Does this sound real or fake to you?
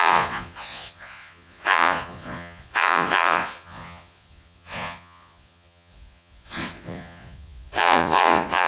fake